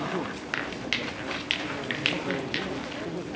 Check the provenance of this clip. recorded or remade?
recorded